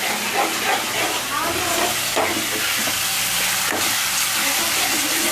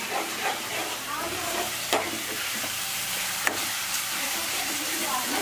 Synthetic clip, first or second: second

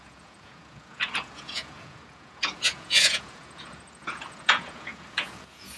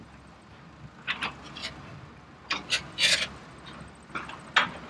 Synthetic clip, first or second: first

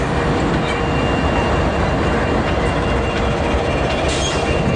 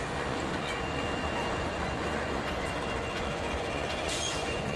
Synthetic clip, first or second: second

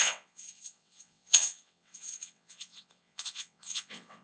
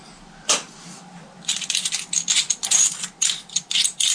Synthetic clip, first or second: first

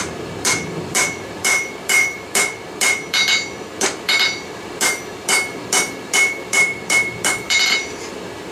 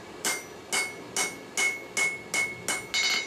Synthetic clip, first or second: first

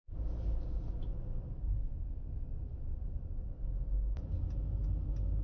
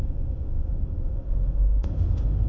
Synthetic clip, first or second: second